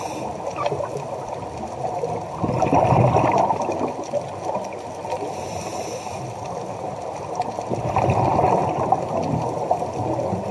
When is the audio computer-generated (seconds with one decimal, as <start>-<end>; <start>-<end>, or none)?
none